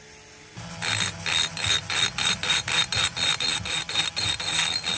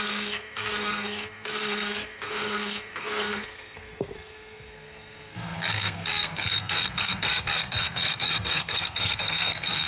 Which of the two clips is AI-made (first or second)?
second